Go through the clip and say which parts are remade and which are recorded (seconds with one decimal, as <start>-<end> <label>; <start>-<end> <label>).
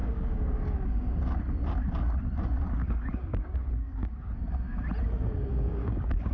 0.0-1.2 remade; 1.2-2.8 recorded; 2.8-4.3 remade; 4.3-5.5 recorded; 5.5-6.3 remade